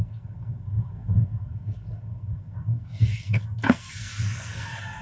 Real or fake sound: fake